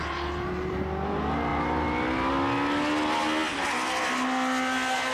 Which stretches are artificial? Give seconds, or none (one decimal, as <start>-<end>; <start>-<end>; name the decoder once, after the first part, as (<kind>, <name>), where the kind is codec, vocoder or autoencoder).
none